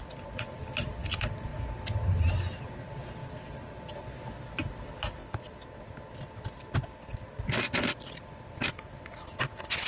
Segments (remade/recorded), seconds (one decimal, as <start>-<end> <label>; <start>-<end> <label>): 0.0-9.9 recorded